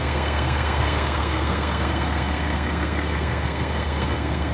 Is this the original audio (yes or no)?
no